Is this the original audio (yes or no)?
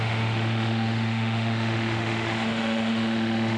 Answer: no